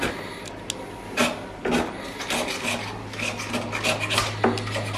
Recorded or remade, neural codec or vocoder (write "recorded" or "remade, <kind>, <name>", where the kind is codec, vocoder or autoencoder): recorded